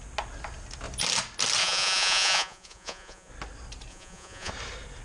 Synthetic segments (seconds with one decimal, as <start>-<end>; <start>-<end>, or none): 1.6-3.3; 3.9-4.5